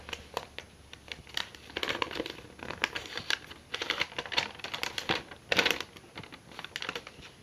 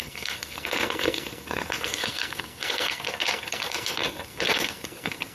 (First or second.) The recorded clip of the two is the first